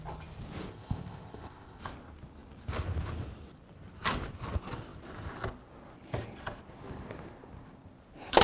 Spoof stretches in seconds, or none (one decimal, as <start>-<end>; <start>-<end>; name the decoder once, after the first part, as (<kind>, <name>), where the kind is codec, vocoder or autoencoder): 0.7-1.8 (codec, ZipCodec)